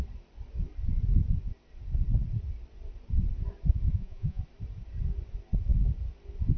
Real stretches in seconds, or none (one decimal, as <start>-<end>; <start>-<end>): 0.0-3.9; 4.4-6.6